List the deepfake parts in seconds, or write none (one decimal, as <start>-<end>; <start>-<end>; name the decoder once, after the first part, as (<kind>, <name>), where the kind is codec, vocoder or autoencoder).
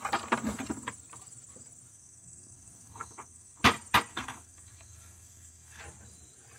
1.9-3.6 (codec, SNAC); 4.1-5.8